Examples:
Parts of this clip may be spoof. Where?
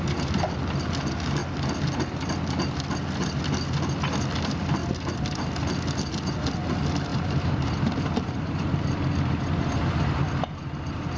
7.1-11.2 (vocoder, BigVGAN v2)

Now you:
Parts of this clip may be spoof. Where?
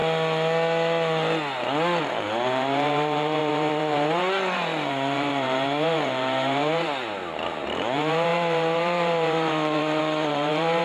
2.0-10.8 (vocoder, BigVGAN v2)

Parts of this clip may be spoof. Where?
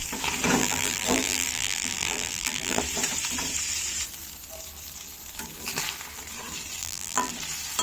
0.6-2.8 (vocoder, BigVGAN v2); 6.8-7.3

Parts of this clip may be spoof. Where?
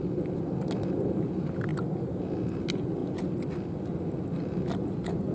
1.7-2.4 (vocoder, BigVGAN v2)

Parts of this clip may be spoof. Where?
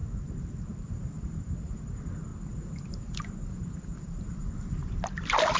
0.0-0.9 (vocoder, BigVGAN v2)